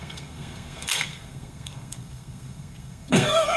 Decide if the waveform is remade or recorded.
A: remade